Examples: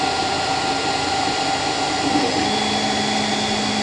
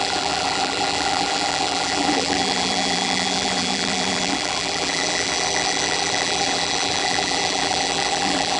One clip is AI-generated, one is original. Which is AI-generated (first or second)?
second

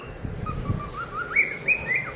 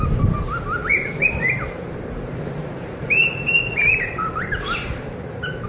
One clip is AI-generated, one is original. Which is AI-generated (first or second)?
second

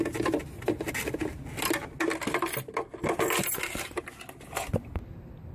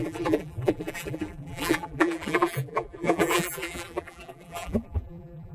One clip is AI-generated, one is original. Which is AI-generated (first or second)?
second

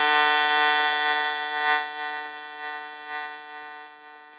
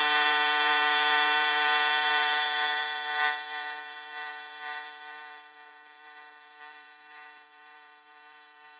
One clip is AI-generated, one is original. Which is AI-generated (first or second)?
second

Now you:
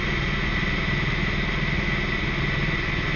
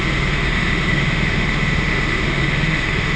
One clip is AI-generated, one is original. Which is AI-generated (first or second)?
second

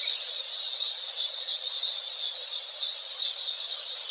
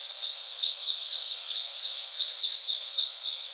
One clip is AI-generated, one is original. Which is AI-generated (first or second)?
second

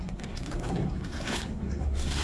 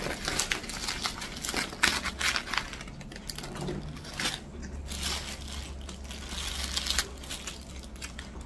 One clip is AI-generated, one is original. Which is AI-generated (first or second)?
first